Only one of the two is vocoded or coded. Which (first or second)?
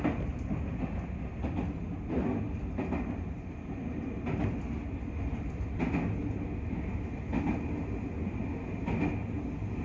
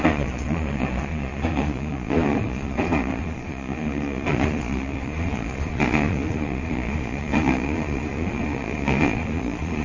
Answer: second